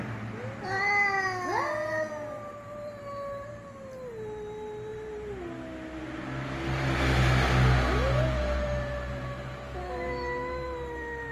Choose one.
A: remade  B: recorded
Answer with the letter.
B